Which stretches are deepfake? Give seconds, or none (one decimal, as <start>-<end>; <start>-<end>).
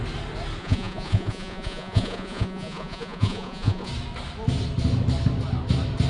0.6-3.9